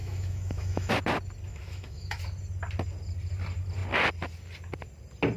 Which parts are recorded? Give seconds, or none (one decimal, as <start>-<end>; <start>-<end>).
0.9-1.5; 2.2-5.4